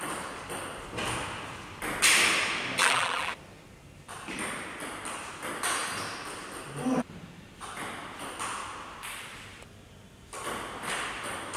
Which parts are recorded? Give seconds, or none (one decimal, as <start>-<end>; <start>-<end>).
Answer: 0.0-2.8; 3.3-11.6